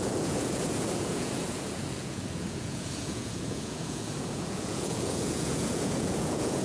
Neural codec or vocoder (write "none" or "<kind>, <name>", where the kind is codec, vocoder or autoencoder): vocoder, Vocos